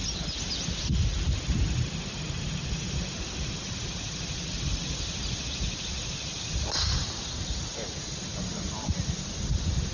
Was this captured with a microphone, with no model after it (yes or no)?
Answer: yes